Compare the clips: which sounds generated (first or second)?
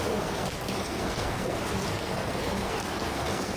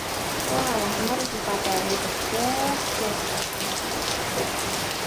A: first